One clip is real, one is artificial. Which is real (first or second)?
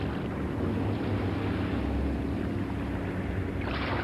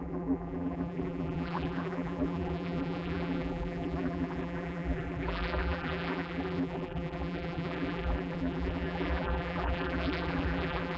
first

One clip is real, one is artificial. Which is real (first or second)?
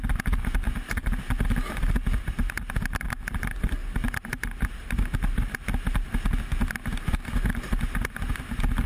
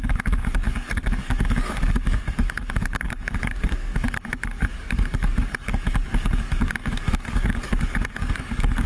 first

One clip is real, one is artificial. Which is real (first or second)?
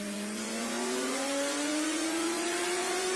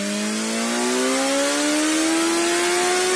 second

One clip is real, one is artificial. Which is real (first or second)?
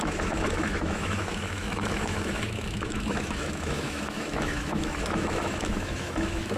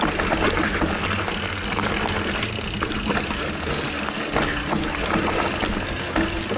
second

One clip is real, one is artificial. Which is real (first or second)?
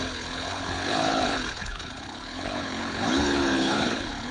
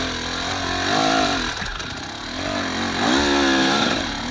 second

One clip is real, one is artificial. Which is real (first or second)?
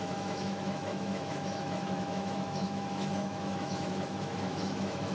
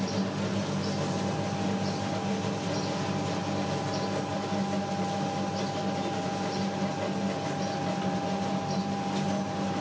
second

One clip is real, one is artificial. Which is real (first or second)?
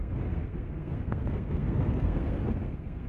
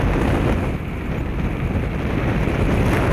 second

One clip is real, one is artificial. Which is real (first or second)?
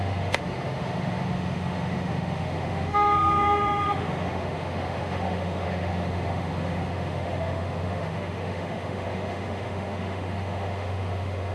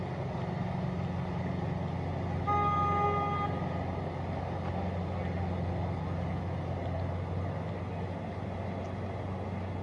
second